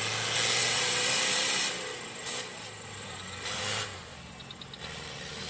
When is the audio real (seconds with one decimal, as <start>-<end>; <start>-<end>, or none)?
0.0-0.6; 3.6-5.5